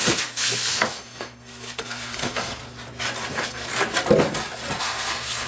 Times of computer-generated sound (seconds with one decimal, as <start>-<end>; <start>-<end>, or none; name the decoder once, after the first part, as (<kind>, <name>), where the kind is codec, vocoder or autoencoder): 0.0-2.6 (codec, SNAC); 3.3-3.7; 4.8-5.5